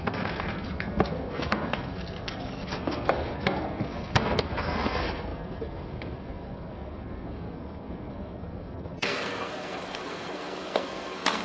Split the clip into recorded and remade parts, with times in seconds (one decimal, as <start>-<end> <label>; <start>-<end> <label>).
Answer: 0.0-11.4 remade